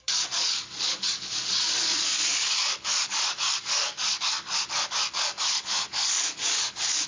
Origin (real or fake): fake